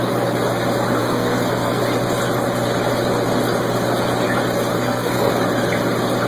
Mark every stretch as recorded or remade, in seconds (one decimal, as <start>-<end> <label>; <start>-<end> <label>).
0.0-1.0 recorded; 1.0-1.8 remade; 1.8-4.7 recorded; 4.7-5.3 remade; 5.3-6.3 recorded